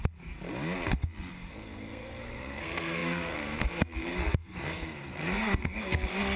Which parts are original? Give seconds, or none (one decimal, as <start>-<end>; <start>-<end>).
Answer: 0.0-1.5